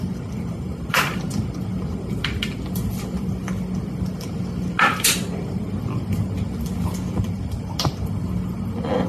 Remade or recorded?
recorded